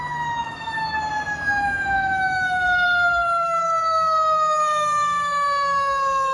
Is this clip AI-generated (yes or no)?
yes